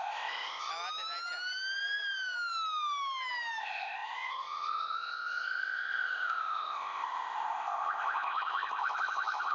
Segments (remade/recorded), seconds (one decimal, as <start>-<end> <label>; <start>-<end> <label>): 0.0-0.7 remade; 0.7-3.6 recorded; 3.6-9.5 remade